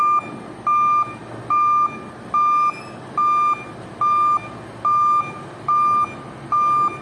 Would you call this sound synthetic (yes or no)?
no